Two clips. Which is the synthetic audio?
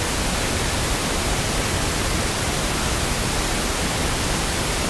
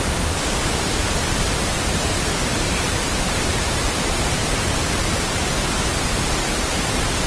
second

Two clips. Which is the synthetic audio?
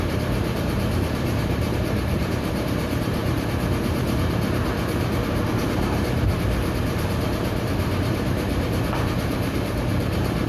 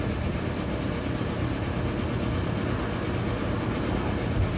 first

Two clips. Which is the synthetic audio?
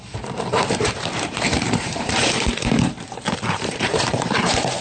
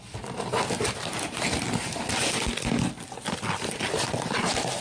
first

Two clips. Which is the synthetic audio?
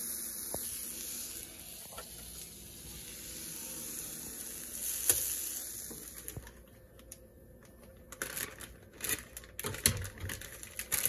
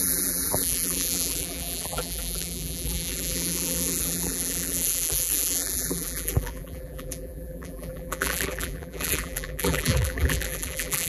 second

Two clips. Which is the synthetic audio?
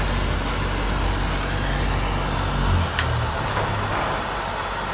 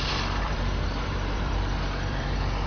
second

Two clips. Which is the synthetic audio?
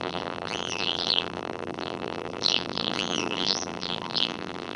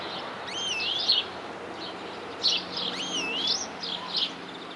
first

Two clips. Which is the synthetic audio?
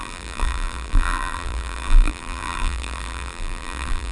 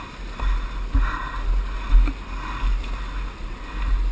first